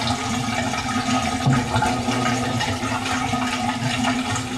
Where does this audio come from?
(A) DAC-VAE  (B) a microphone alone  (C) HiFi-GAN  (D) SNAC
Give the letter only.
B